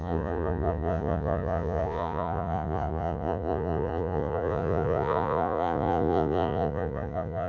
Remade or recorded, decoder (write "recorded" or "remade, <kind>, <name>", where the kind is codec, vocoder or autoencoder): remade, vocoder, Vocos